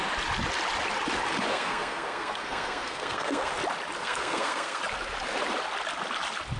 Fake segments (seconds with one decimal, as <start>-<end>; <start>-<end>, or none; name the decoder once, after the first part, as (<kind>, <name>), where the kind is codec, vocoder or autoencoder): 1.5-3.5 (codec, SNAC); 4.0-4.8